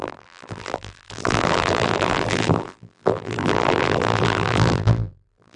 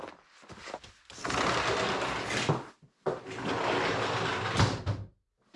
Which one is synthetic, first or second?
first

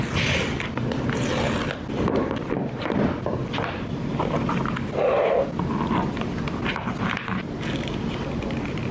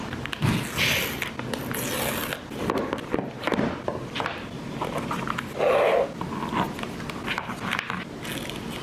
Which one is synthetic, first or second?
first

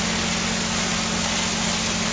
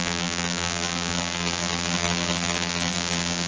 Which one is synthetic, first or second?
second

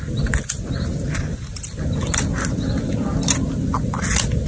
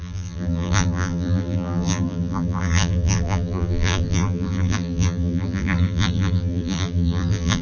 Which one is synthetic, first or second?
second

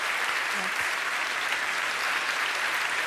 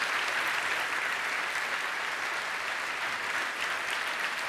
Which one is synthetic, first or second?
second